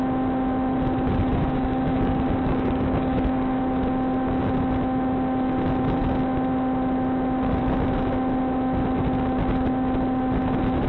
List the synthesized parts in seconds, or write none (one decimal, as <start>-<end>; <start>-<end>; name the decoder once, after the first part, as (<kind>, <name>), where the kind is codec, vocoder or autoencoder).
1.3-3.6 (codec, DAC)